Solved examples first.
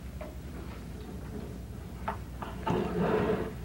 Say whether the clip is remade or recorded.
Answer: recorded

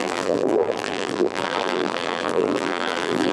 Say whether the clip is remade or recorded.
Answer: remade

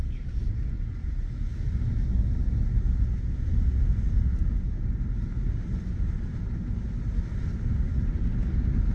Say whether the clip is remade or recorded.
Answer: recorded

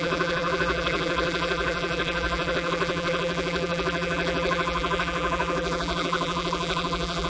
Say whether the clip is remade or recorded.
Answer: remade